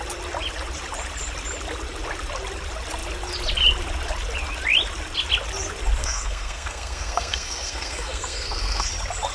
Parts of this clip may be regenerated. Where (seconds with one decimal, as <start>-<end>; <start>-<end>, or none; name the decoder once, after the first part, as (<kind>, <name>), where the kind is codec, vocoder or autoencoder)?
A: 6.0-8.9 (codec, SNAC)